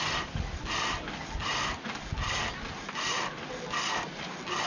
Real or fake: real